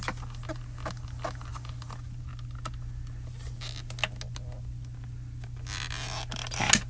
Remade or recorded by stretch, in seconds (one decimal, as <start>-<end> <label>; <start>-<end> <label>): 0.0-6.9 recorded